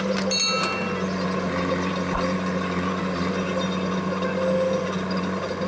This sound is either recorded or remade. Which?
recorded